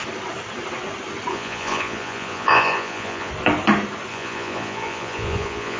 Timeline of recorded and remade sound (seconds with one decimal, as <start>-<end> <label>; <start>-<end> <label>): 0.0-1.3 recorded; 1.3-3.3 remade; 3.3-4.1 recorded; 4.1-5.8 remade